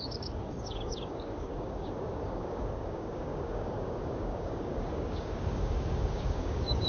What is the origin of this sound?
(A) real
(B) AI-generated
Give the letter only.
B